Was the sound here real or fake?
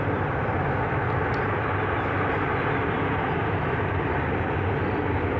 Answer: fake